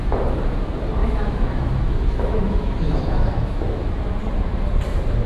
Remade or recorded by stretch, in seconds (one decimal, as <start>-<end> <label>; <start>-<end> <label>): 0.0-1.0 recorded; 1.0-4.2 remade; 4.2-5.3 recorded